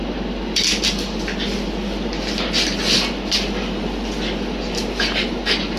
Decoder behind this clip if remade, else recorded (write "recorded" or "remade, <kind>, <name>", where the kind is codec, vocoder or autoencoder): recorded